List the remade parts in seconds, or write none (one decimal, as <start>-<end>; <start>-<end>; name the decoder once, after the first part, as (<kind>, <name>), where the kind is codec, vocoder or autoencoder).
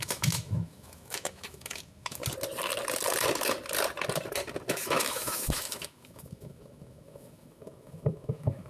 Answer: 0.0-2.2 (autoencoder, DAC-VAE); 4.7-8.7